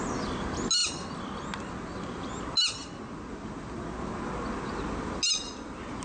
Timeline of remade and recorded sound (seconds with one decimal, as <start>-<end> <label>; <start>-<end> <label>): 0.0-6.0 recorded